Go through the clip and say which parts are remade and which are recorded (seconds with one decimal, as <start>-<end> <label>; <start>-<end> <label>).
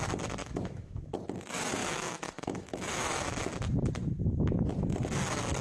0.0-0.4 recorded; 0.4-1.1 remade; 1.1-1.8 recorded; 1.8-3.0 remade; 3.0-5.6 recorded